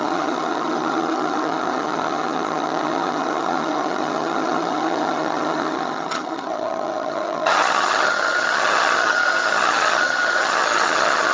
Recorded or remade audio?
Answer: remade